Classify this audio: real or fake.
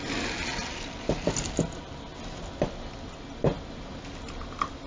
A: real